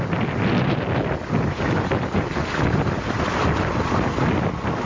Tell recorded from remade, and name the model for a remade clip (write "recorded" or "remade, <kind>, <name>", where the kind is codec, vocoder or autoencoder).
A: recorded